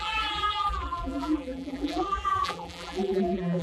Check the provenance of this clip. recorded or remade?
remade